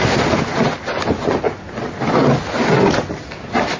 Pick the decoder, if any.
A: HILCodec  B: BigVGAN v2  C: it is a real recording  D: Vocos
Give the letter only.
C